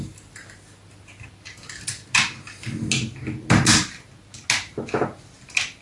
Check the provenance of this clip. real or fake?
real